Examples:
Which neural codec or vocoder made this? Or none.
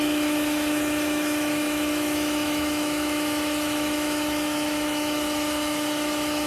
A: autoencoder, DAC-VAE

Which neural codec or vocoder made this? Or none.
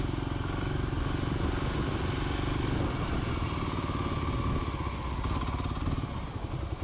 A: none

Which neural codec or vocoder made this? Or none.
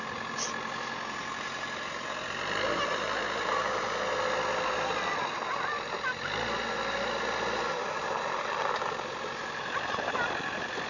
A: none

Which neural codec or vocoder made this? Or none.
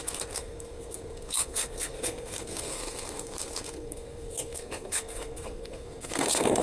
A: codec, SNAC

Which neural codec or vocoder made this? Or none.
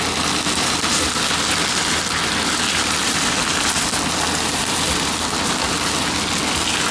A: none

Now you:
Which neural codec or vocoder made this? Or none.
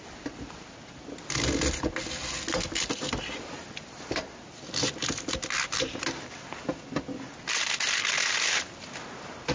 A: none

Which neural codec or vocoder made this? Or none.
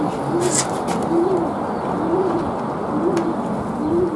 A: none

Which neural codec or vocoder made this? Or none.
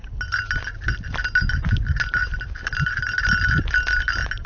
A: none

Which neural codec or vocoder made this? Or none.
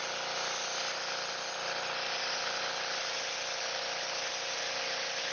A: none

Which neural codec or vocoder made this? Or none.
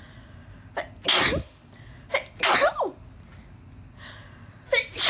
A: none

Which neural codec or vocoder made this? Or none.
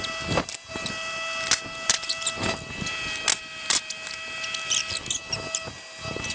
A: none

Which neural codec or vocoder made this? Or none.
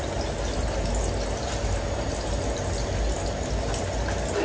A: none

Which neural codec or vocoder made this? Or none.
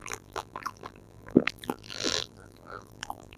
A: vocoder, BigVGAN v2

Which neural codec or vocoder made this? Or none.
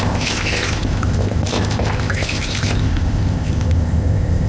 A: codec, ZipCodec